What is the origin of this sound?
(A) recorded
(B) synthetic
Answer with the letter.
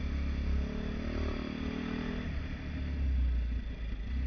A